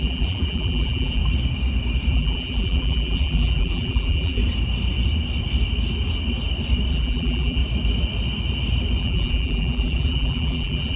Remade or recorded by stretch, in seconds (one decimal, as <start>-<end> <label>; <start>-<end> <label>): 0.0-1.2 remade; 1.2-2.1 recorded; 2.1-4.4 remade; 4.4-6.9 recorded; 6.9-7.6 remade; 7.6-9.0 recorded; 9.0-11.0 remade